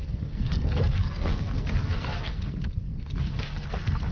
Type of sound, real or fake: fake